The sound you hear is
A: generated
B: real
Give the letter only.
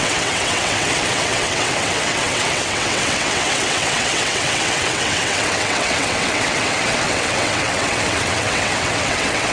A